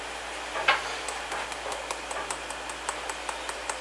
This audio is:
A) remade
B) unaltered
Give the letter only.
B